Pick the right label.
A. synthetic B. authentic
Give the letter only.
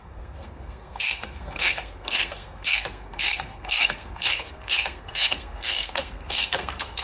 A